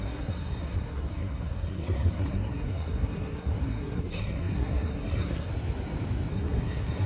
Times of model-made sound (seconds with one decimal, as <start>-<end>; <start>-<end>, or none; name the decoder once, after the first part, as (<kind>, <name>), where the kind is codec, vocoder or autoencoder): 0.0-5.5 (codec, SNAC); 6.3-7.1